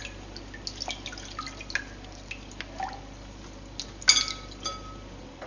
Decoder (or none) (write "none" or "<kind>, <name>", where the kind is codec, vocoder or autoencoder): none